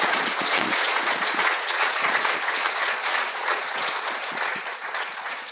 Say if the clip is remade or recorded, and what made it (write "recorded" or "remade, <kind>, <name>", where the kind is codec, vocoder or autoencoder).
remade, vocoder, Vocos